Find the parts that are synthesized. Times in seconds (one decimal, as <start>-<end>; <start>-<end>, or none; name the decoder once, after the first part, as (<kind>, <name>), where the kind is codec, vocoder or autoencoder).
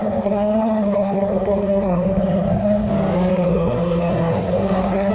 0.0-2.9 (codec, SNAC); 3.3-5.1